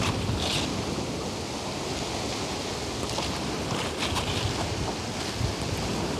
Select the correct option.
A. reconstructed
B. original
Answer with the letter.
B